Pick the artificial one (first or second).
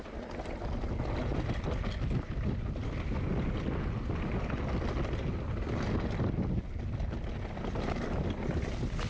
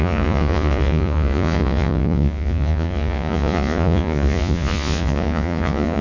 second